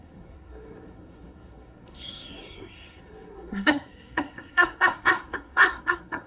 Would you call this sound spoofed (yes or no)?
yes